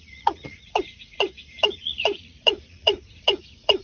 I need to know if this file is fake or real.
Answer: fake